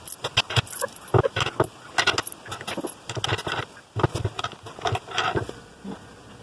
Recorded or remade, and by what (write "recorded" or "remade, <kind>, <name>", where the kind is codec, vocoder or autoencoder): recorded